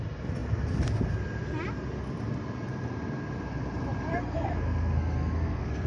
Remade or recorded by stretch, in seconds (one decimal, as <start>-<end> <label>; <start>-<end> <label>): 0.0-4.1 recorded; 4.1-5.9 remade

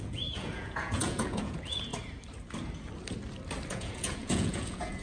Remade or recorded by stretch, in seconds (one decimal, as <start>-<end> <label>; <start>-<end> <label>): 0.0-1.9 remade; 1.9-3.7 recorded; 3.7-5.0 remade